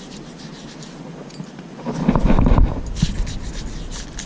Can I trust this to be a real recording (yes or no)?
yes